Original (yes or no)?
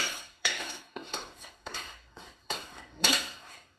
no